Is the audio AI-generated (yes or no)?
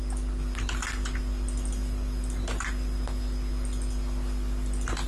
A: no